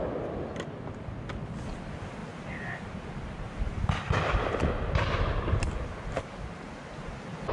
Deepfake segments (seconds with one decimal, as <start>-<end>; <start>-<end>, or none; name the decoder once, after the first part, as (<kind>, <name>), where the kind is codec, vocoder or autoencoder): none